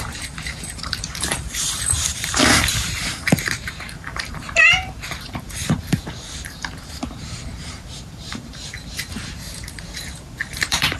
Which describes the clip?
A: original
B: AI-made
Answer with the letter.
B